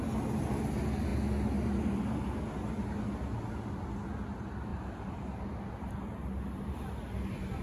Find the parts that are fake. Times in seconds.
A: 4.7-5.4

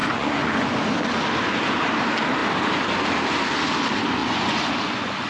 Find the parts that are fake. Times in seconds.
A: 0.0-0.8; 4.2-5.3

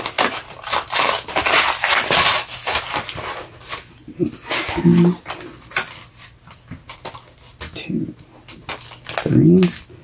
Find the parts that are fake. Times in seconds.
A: none